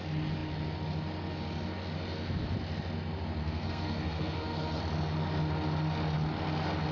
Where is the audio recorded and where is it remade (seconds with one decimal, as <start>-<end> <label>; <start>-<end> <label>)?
0.0-3.4 recorded; 3.4-4.8 remade; 4.8-6.9 recorded

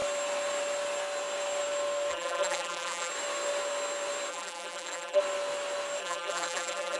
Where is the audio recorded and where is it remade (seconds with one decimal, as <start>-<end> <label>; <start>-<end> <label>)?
0.0-2.1 recorded; 2.1-3.1 remade; 3.1-4.3 recorded; 4.3-5.2 remade; 5.2-6.0 recorded; 6.0-7.0 remade